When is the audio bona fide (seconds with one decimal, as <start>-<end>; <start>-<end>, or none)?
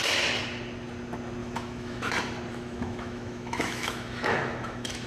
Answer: 0.0-1.4; 2.1-2.5